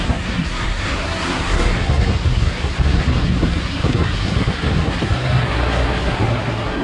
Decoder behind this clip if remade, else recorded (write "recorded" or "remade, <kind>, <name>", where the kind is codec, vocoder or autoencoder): remade, codec, SNAC